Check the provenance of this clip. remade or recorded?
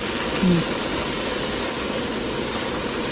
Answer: recorded